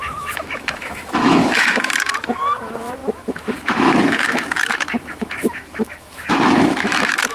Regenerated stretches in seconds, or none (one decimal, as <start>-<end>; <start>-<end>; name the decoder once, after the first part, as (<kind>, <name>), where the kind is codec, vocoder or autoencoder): 0.0-7.3 (autoencoder, DAC-VAE)